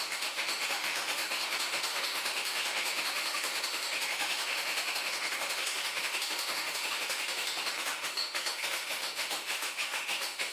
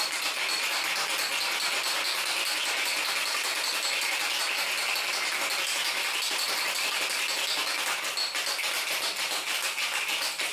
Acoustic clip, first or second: second